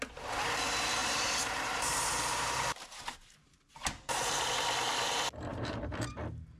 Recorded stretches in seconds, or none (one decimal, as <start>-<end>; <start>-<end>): 0.0-1.0; 4.5-5.5; 6.1-6.6